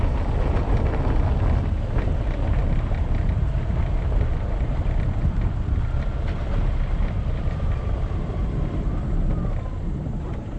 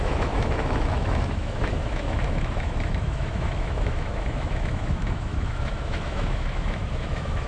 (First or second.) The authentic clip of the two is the first